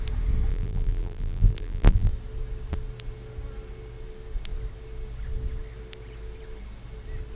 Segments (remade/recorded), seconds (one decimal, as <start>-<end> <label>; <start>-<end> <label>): 0.0-0.5 recorded; 0.5-2.1 remade; 2.1-7.4 recorded